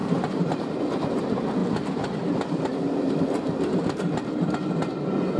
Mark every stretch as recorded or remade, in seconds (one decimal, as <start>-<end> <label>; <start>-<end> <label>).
0.0-0.8 remade; 0.8-5.4 recorded